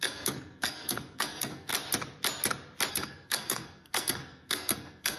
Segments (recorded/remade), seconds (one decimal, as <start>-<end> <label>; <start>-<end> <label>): 0.0-1.7 remade; 1.7-2.9 recorded; 2.9-5.2 remade

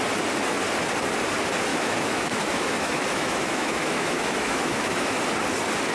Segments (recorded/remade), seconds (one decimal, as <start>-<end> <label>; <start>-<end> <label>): 0.0-1.7 recorded; 1.7-5.2 remade; 5.2-5.9 recorded

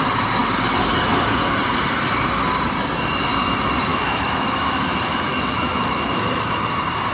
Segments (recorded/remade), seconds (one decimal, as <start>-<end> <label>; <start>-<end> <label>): 0.0-3.9 recorded; 3.9-6.5 remade; 6.5-7.1 recorded

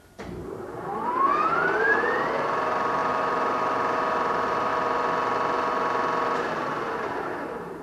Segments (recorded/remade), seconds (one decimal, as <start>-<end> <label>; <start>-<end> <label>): 0.0-4.7 remade; 4.7-6.5 recorded; 6.5-7.8 remade

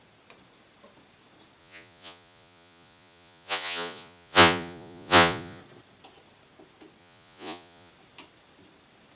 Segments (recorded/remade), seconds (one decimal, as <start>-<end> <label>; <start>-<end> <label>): 0.0-1.6 recorded; 1.6-5.6 remade; 5.6-7.0 recorded; 7.0-7.9 remade; 7.9-9.2 recorded